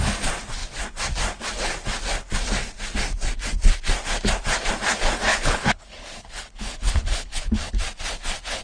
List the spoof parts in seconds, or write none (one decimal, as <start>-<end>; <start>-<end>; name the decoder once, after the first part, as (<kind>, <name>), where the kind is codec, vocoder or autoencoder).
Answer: 5.3-7.7 (codec, HILCodec)